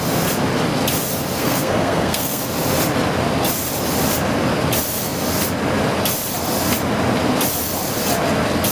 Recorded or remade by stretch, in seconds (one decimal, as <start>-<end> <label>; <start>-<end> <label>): 0.0-1.4 recorded; 1.4-2.4 remade; 2.4-8.7 recorded

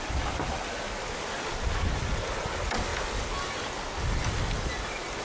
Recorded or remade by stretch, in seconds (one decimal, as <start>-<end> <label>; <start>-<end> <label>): 0.0-5.2 recorded

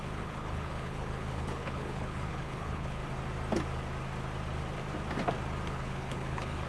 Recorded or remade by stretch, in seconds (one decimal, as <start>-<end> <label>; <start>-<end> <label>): 0.0-3.0 remade; 3.0-5.7 recorded; 5.7-6.7 remade

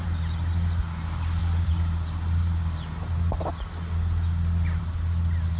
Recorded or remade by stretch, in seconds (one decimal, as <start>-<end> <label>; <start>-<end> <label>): 0.0-5.6 recorded